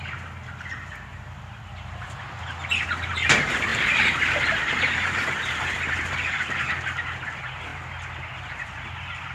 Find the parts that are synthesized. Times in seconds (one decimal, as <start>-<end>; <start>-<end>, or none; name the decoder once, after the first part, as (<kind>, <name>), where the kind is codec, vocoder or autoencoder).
1.1-1.6 (vocoder, BigVGAN v2); 3.7-6.7